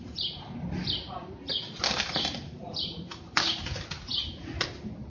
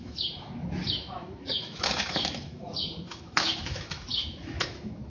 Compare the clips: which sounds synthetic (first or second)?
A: second